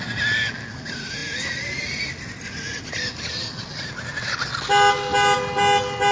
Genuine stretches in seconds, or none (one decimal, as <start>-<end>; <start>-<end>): 0.0-6.1

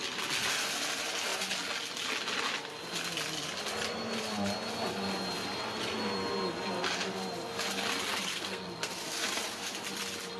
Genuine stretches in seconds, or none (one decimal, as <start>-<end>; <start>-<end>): 0.0-8.3; 8.9-10.4